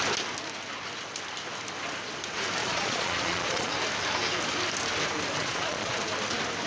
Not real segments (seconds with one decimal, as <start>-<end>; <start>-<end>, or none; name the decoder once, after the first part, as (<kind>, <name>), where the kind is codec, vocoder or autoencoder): 2.6-3.7 (vocoder, Vocos); 5.4-6.0